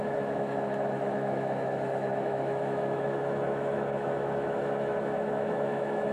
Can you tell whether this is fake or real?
fake